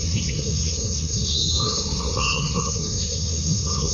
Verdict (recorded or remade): remade